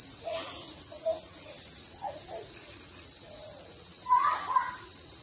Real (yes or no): no